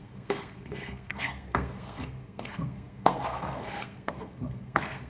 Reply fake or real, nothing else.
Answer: fake